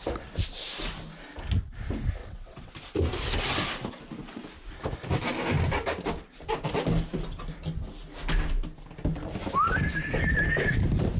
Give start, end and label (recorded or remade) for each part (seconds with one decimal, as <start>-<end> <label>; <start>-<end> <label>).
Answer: 0.0-2.2 recorded; 2.2-2.7 remade; 2.7-11.2 recorded